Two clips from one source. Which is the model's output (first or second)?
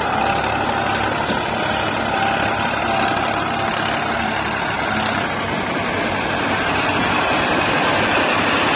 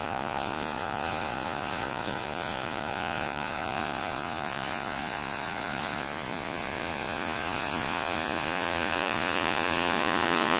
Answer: second